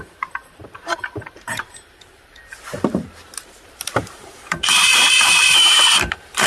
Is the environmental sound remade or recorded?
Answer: remade